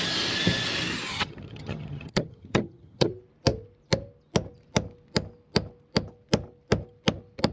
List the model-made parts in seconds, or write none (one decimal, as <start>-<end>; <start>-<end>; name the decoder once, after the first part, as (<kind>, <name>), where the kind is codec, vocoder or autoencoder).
1.1-3.1 (vocoder, HiFi-GAN)

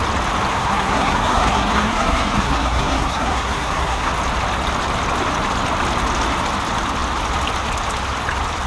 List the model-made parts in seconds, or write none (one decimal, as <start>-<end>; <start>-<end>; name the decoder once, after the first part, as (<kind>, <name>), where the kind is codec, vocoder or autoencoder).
0.5-4.1 (codec, SNAC)

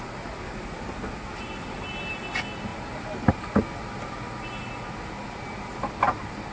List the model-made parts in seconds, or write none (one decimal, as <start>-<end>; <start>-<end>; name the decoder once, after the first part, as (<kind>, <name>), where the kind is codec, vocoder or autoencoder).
none

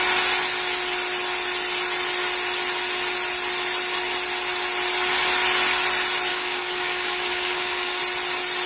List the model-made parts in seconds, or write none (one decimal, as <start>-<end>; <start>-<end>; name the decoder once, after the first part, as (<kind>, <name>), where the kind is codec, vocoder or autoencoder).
6.3-8.0 (codec, DAC)

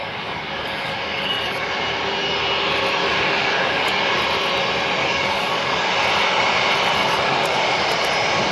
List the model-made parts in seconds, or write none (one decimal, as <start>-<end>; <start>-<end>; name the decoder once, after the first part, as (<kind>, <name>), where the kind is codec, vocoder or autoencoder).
0.0-1.7 (codec, DAC); 3.0-4.0; 5.0-5.9; 7.0-7.6

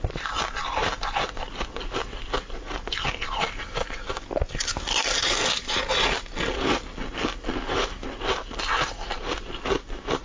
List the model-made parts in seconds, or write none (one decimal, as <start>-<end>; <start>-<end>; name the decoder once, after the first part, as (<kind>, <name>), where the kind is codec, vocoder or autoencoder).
none